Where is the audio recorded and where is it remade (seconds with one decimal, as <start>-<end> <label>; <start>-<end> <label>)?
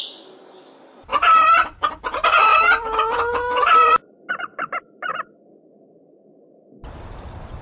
0.0-1.1 recorded; 1.1-2.0 remade; 2.0-2.5 recorded; 2.5-4.3 remade; 4.3-7.6 recorded